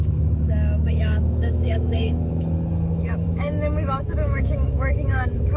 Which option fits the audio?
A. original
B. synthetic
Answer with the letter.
B